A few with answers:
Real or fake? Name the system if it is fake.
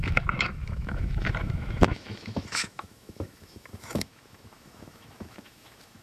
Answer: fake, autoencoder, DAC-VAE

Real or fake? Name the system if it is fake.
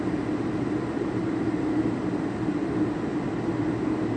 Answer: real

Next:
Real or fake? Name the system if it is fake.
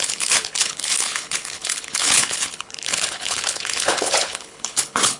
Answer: fake, codec, HILCodec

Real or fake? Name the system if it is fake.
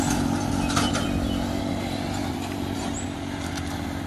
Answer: real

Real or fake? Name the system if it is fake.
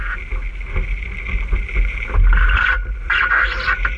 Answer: real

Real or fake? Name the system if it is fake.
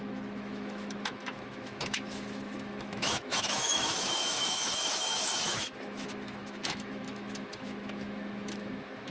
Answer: fake, autoencoder, DAC-VAE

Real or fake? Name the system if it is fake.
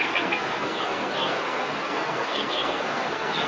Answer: fake, codec, SNAC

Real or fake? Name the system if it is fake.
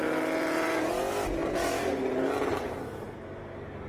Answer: real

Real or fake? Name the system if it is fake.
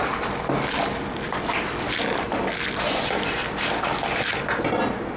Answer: real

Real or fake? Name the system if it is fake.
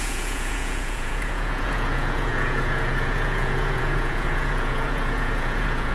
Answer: fake, vocoder, Vocos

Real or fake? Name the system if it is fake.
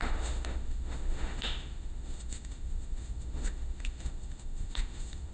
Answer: fake, autoencoder, DAC-VAE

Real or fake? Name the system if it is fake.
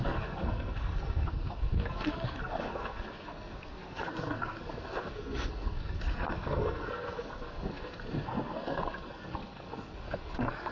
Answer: fake, codec, SNAC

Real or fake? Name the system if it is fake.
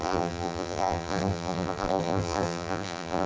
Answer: fake, vocoder, BigVGAN v2